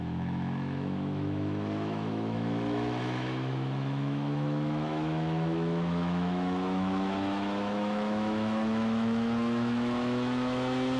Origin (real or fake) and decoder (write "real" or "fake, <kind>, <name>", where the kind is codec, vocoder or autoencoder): fake, autoencoder, DAC-VAE